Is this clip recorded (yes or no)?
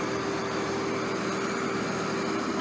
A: yes